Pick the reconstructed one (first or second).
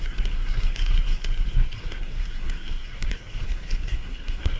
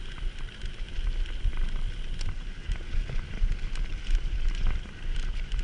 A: first